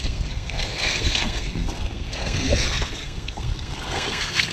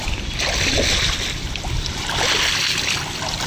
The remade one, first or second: first